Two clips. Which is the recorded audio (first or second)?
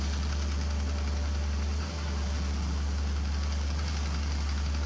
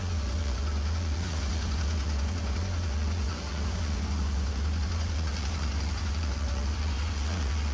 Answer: first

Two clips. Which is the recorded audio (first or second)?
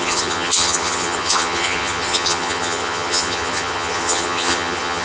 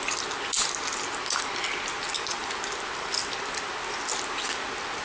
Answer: second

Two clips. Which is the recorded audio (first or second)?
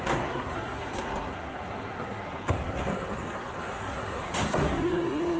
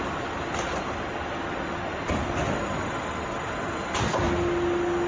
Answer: second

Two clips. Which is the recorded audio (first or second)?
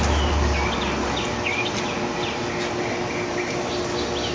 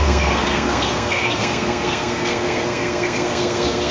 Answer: first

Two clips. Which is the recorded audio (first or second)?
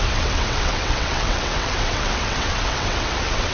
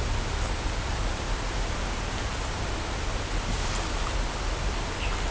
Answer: second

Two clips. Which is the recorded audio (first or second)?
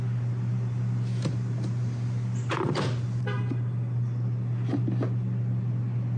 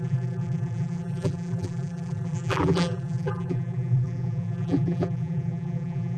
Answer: first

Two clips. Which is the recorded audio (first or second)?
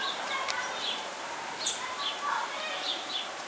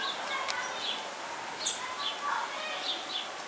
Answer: second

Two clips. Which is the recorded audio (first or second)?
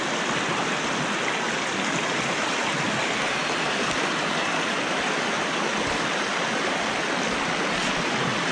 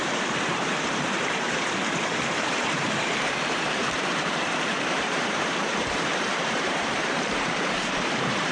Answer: first